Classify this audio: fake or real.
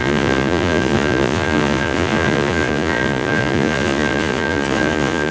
fake